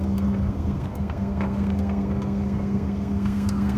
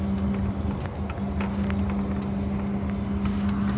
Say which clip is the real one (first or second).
second